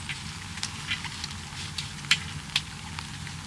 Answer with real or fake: real